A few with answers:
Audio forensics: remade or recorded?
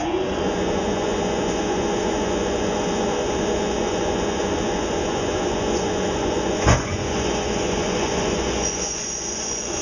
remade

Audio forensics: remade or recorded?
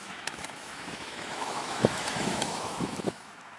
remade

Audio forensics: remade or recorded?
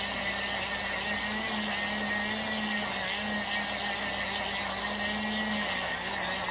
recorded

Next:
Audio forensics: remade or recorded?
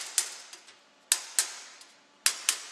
recorded